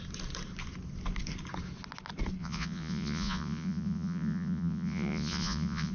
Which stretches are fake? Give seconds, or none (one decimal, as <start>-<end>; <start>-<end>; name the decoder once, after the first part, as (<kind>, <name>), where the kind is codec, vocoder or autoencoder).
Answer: 2.4-5.9 (vocoder, Vocos)